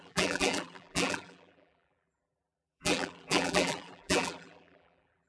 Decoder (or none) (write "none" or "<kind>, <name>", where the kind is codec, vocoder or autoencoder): vocoder, BigVGAN v2